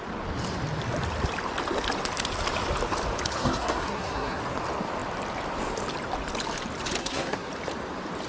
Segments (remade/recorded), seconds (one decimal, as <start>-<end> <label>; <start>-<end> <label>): 0.0-3.4 recorded; 3.4-4.4 remade; 4.4-7.0 recorded; 7.0-7.5 remade; 7.5-8.3 recorded